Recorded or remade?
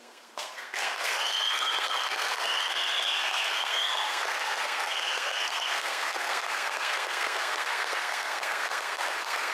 remade